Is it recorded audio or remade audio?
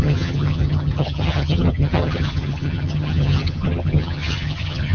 remade